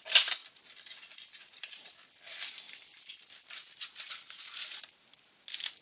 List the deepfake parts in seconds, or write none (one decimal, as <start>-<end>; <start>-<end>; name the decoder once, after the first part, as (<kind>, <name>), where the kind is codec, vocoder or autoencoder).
none